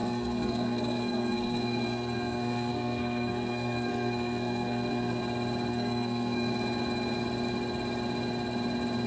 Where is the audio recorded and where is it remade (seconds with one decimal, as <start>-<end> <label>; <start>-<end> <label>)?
0.0-5.2 remade; 5.2-5.7 recorded; 5.7-6.5 remade; 6.5-9.1 recorded